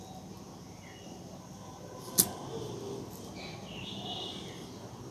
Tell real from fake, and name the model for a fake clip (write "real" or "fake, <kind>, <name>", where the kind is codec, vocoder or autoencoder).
real